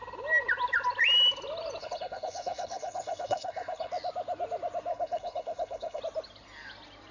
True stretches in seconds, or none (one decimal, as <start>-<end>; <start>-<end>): 0.0-1.8; 3.9-4.9; 6.0-7.1